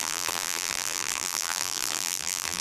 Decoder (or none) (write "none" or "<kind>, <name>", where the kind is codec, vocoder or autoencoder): vocoder, BigVGAN v2